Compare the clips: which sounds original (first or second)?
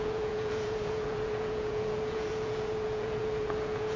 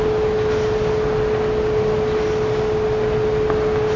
second